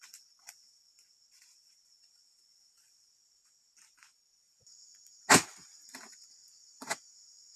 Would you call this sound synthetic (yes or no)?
no